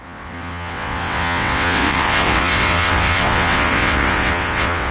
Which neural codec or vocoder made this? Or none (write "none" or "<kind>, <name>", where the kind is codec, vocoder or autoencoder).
vocoder, WaveNeXt